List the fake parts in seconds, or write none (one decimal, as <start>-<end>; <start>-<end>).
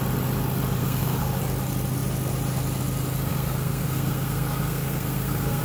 0.8-1.4; 3.3-5.6